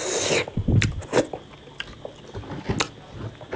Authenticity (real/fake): real